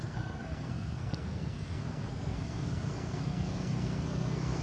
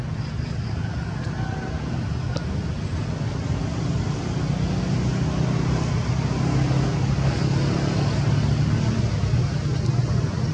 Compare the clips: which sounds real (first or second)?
second